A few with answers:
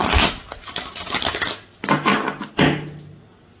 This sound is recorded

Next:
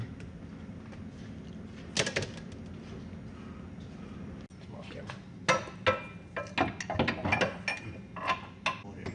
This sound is recorded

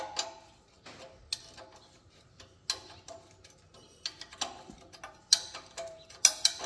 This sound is recorded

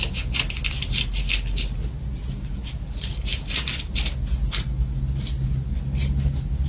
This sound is recorded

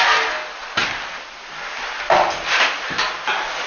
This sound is recorded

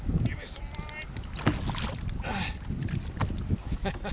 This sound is recorded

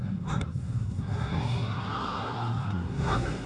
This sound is remade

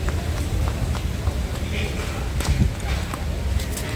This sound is recorded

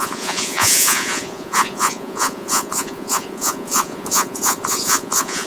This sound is remade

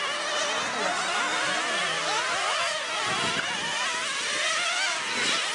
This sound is recorded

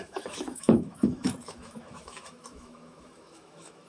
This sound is remade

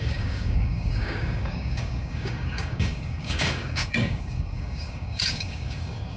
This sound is remade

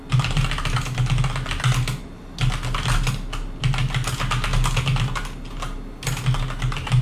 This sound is recorded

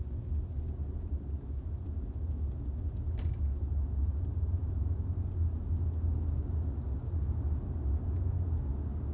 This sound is recorded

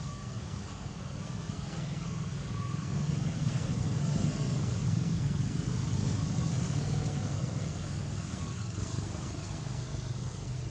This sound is remade